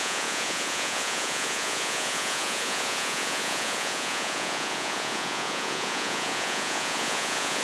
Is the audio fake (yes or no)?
yes